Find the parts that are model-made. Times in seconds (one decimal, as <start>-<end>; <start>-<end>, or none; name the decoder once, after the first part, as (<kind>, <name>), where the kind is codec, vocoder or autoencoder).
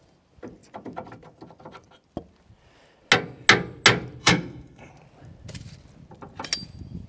4.2-4.9 (codec, SNAC)